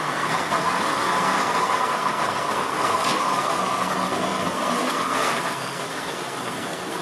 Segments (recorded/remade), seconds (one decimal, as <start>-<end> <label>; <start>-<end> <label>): 0.0-7.0 remade